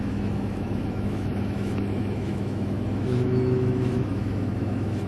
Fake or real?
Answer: fake